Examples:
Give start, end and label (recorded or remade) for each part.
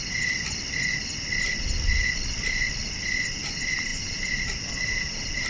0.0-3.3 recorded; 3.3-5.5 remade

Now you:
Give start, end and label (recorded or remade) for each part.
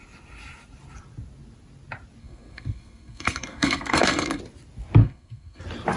0.0-2.2 recorded; 2.2-4.4 remade; 4.4-5.0 recorded; 5.0-5.6 remade; 5.6-6.0 recorded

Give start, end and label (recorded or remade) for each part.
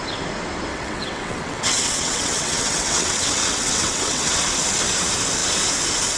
0.0-0.7 recorded; 0.7-4.4 remade; 4.4-6.2 recorded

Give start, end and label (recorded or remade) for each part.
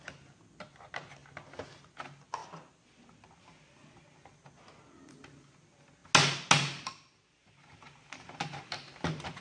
0.0-9.4 recorded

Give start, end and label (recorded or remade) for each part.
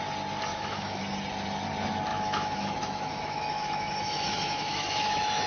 0.0-0.5 recorded; 0.5-1.0 remade; 1.0-2.1 recorded; 2.1-5.5 remade